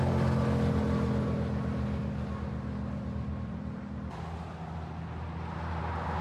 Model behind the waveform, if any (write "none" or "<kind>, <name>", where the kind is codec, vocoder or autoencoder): none